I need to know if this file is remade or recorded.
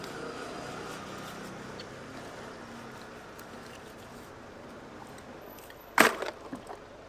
recorded